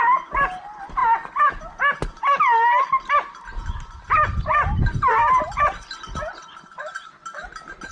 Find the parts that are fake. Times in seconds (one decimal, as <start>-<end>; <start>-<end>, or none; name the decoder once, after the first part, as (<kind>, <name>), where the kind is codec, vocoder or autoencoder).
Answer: none